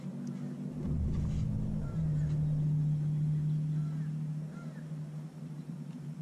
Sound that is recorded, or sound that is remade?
recorded